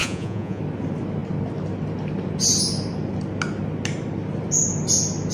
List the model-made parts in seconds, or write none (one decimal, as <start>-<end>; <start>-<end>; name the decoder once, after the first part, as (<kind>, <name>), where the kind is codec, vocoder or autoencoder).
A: 0.0-0.6 (vocoder, Vocos)